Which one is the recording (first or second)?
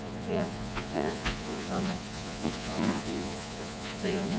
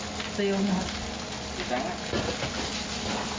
second